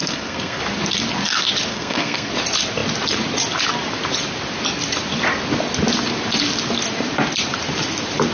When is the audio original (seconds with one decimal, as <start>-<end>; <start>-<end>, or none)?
0.6-1.7; 2.3-8.3